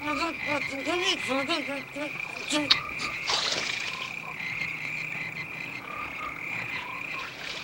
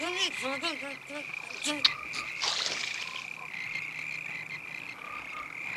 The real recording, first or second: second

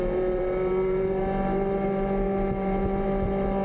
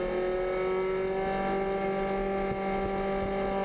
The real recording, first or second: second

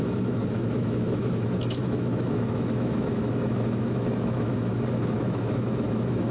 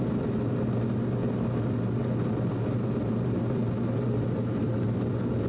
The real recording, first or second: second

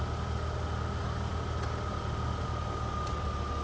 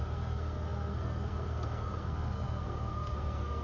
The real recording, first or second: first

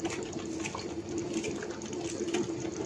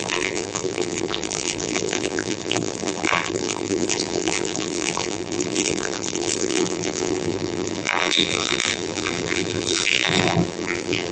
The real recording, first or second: first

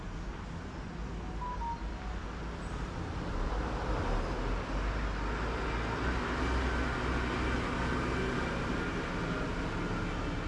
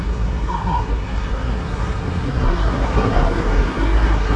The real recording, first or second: first